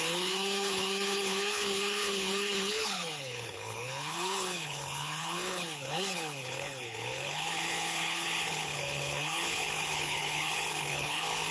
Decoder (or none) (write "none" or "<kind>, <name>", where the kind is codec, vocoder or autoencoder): codec, HILCodec